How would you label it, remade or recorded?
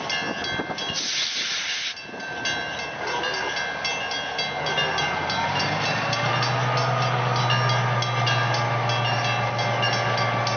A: recorded